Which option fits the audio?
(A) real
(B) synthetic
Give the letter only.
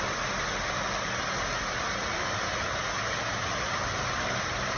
A